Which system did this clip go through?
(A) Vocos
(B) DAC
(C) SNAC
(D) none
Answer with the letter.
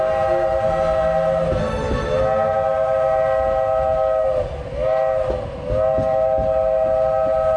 D